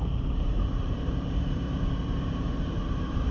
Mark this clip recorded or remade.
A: remade